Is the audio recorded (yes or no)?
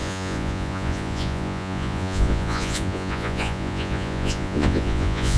no